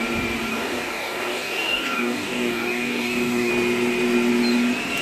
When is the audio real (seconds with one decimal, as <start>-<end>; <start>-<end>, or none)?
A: 0.0-0.5; 3.5-5.0

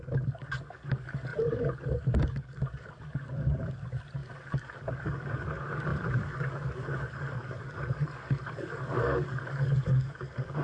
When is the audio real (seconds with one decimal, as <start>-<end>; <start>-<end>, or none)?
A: none

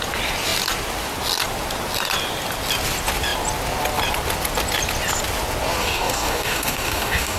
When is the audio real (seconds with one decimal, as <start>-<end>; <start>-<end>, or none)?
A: 0.0-5.8

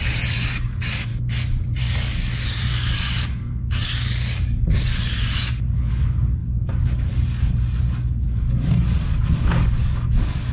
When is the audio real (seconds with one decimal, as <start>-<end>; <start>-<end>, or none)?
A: 1.1-1.8

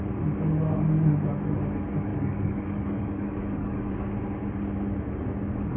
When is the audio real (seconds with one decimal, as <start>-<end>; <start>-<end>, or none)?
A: 0.0-2.1; 3.9-5.8

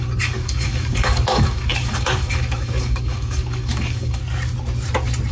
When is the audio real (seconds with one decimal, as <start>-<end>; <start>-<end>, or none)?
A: 4.2-5.3

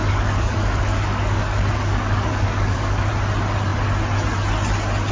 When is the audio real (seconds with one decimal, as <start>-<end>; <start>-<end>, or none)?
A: 3.1-5.1

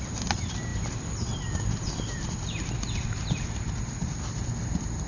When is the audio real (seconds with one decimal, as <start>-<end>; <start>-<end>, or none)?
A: 0.0-5.1